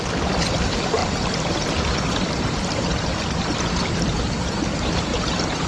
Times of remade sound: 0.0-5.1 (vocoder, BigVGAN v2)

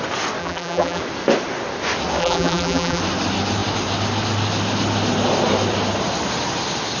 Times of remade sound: 0.4-1.0 (vocoder, BigVGAN v2); 2.2-3.0

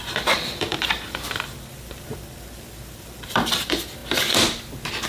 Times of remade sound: 0.0-4.0 (vocoder, BigVGAN v2)

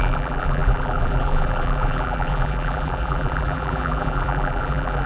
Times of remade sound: 0.0-5.1 (vocoder, BigVGAN v2)

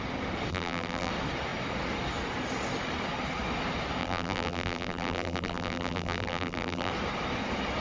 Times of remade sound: 0.5-1.1 (vocoder, BigVGAN v2); 4.0-6.9

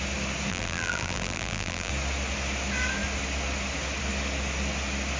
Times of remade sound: 0.5-1.9 (vocoder, BigVGAN v2)

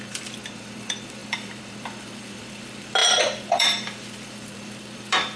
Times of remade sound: 0.0-5.4 (vocoder, BigVGAN v2)